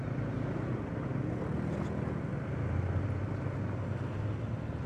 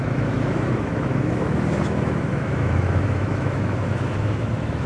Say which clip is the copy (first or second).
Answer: second